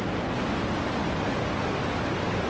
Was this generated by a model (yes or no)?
no